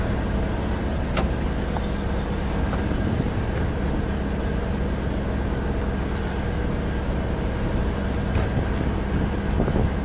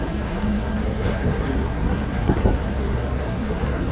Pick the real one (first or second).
first